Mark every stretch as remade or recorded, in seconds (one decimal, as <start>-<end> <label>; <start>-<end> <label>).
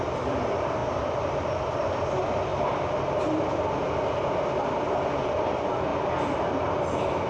0.0-7.3 recorded